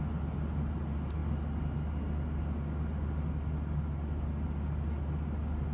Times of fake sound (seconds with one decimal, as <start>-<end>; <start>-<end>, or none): none